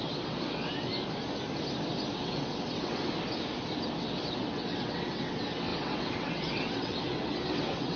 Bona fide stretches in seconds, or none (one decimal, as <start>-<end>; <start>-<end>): 0.9-2.1; 3.0-4.0